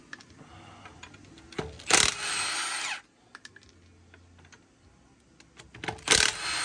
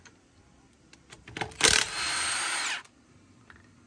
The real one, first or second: first